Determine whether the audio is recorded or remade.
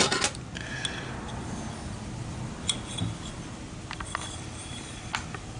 recorded